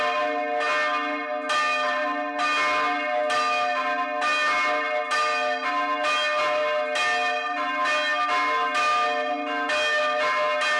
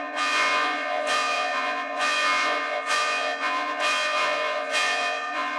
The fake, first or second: second